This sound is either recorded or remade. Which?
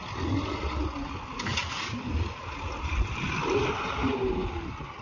recorded